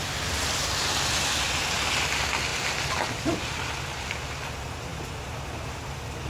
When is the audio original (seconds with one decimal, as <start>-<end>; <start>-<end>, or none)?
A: 0.0-6.3